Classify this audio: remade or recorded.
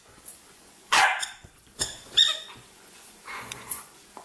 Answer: remade